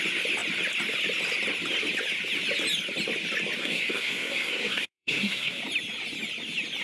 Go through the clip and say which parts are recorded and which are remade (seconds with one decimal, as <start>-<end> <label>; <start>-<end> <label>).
0.0-3.6 recorded; 3.6-5.6 remade; 5.6-6.8 recorded

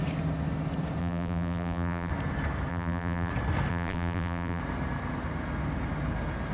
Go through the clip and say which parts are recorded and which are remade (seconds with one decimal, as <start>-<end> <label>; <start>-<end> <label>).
0.0-1.0 recorded; 1.0-2.1 remade; 2.1-2.7 recorded; 2.7-3.3 remade; 3.3-3.7 recorded; 3.7-4.6 remade; 4.6-6.5 recorded